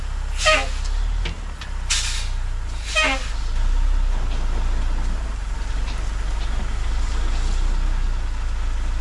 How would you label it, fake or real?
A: real